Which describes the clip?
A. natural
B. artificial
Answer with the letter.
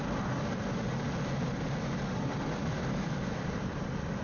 A